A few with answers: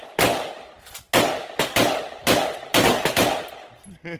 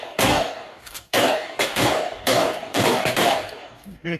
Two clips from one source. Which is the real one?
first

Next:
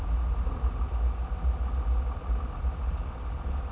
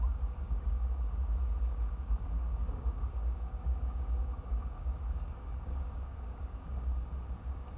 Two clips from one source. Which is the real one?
first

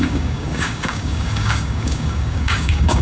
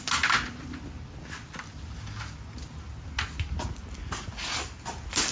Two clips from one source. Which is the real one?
second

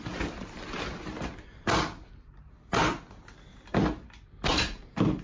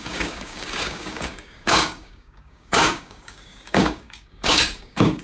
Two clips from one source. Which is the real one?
first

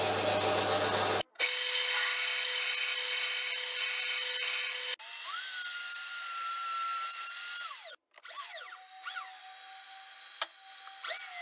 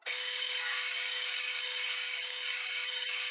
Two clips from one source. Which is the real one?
first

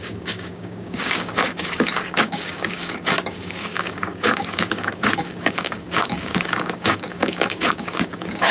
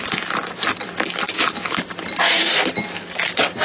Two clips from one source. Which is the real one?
second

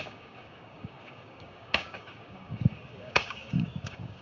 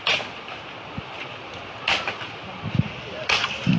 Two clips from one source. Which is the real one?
second